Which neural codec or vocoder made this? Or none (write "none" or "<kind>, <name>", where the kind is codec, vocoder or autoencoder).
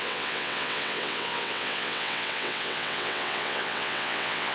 vocoder, WaveNeXt